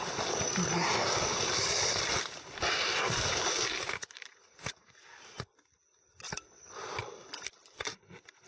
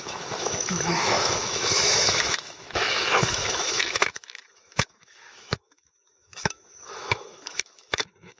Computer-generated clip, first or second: second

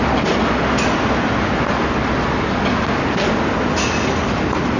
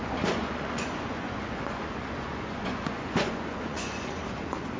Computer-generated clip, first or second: second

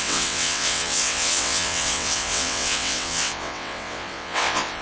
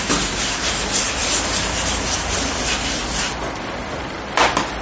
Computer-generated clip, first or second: first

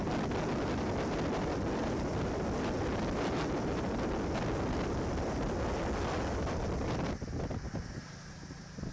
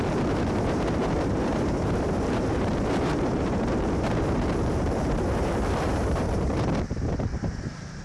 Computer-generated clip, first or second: second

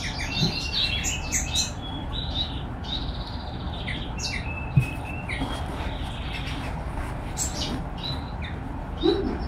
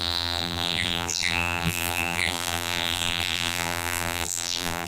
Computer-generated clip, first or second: second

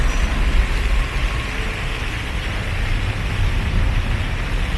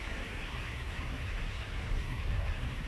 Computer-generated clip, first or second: second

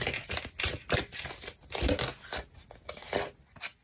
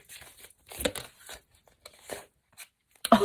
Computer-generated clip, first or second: second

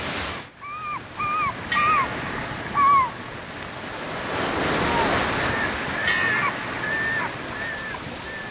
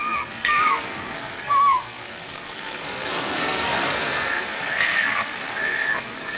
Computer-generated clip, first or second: second